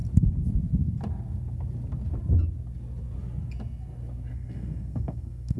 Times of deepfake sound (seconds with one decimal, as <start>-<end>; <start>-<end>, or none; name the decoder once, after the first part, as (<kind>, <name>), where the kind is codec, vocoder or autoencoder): 4.3-5.6 (codec, SNAC)